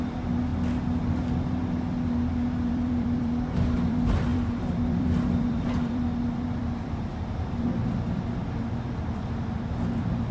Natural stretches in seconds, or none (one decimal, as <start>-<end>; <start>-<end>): 0.5-1.0; 1.6-2.7